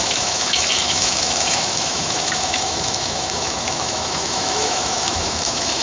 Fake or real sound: fake